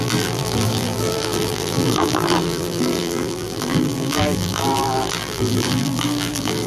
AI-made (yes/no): yes